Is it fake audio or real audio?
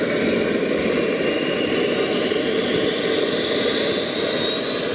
real